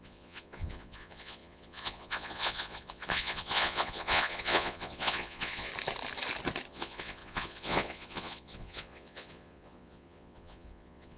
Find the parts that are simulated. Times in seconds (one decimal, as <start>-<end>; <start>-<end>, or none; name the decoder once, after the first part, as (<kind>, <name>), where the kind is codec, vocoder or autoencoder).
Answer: 0.0-5.7 (vocoder, Vocos); 6.7-11.2